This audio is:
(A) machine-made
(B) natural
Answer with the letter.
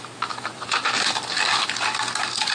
B